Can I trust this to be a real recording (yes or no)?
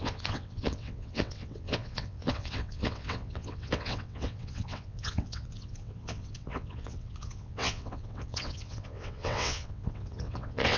no